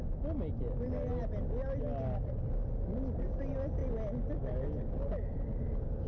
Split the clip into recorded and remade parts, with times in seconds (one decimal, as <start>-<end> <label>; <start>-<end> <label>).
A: 0.0-6.1 recorded